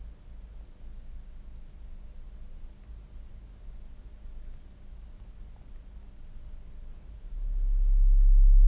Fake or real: real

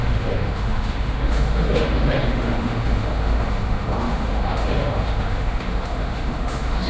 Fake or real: fake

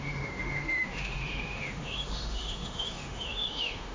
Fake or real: fake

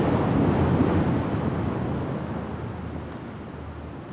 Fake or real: real